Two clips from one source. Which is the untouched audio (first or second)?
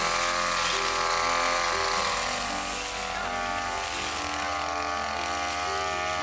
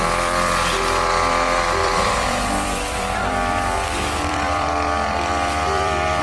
first